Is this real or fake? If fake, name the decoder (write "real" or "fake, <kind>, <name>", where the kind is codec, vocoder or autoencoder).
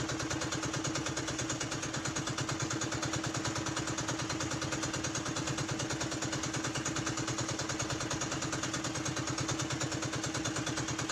real